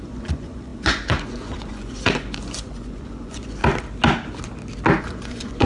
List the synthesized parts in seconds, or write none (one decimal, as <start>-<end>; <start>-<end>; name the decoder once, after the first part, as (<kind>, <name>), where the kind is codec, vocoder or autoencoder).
0.0-3.6 (vocoder, Vocos); 5.0-5.7